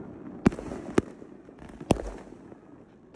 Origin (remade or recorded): remade